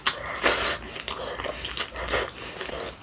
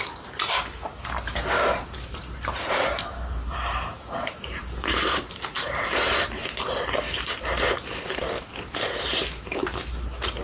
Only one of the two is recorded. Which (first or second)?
first